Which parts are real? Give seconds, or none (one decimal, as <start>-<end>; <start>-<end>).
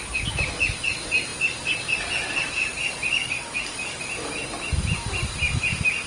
0.0-3.2; 4.0-6.1